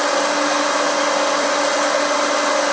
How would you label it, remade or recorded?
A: recorded